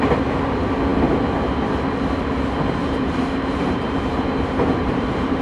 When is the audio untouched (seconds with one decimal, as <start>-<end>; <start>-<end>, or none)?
0.0-2.8